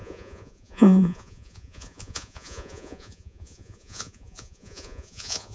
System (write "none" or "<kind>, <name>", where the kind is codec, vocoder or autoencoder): vocoder, Vocos